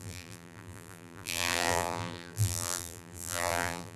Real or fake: fake